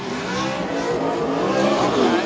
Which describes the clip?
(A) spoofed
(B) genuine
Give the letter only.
B